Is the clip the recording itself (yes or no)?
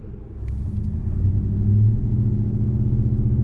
yes